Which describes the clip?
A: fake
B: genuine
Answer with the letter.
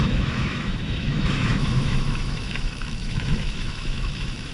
A